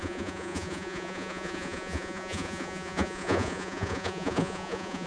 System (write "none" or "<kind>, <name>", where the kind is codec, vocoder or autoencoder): vocoder, Vocos